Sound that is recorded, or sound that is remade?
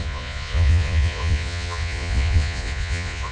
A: remade